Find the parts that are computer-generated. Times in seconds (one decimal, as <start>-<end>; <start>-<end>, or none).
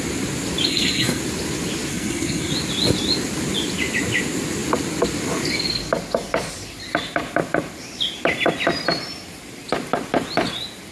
0.7-1.2; 1.9-2.5